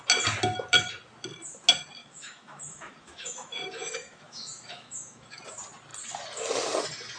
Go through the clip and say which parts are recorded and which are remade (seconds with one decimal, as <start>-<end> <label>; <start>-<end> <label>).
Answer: 0.0-2.0 recorded; 2.0-5.4 remade; 5.4-7.2 recorded